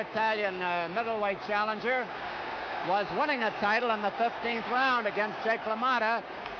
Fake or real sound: fake